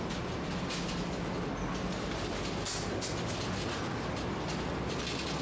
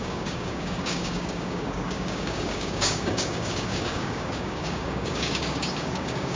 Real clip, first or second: first